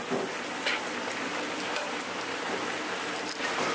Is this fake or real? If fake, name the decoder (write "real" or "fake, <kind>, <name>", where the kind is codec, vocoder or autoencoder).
real